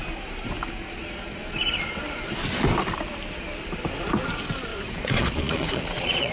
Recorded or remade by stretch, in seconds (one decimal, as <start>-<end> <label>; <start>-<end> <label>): 0.0-4.7 recorded; 4.7-6.3 remade